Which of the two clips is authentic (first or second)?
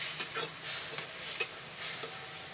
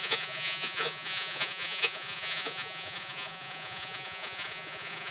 first